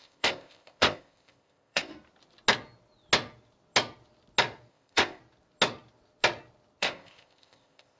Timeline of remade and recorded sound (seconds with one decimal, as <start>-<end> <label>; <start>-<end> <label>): 0.0-1.9 remade; 1.9-4.7 recorded; 4.7-5.2 remade; 5.2-6.8 recorded; 6.8-8.0 remade